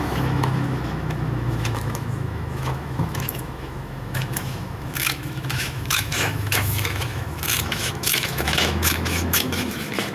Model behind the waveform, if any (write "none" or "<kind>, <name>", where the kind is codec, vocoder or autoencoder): autoencoder, DAC-VAE